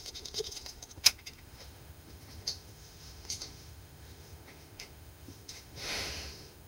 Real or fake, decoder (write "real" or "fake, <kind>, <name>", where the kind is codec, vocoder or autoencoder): fake, autoencoder, DAC-VAE